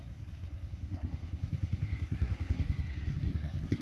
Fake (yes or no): yes